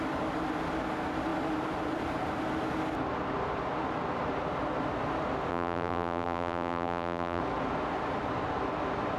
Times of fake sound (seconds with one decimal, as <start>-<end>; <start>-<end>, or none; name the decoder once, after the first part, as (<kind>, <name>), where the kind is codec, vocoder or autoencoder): 5.5-7.4 (vocoder, BigVGAN v2)